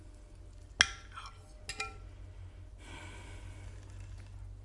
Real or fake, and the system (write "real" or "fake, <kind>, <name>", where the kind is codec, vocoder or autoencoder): real